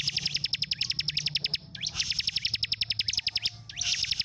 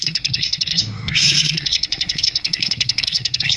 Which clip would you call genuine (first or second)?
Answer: first